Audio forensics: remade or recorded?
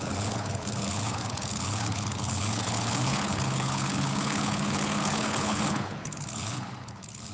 remade